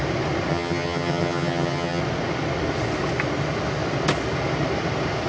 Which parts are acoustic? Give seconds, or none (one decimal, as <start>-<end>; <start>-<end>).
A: 0.0-0.5; 2.0-5.3